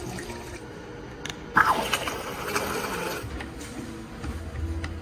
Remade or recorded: recorded